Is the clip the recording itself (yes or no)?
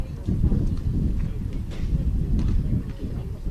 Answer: yes